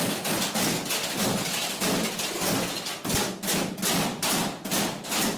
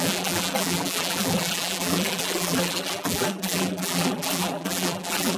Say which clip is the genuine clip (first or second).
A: first